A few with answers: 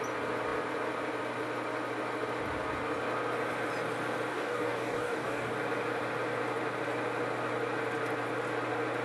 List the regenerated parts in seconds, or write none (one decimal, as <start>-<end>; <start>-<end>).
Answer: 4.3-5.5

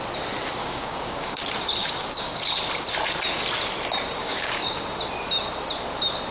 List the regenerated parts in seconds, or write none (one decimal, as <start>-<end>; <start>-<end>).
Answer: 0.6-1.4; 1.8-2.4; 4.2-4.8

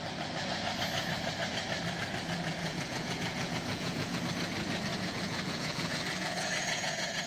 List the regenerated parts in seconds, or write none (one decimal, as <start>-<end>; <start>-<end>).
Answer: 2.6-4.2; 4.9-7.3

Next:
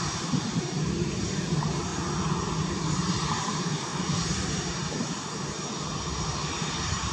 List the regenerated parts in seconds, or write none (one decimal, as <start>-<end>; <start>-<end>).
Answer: 0.0-1.9; 2.7-7.1

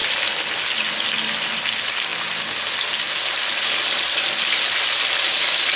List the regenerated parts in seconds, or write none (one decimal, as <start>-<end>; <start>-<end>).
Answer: none